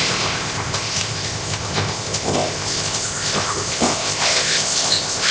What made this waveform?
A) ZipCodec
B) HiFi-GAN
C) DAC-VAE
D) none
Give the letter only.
A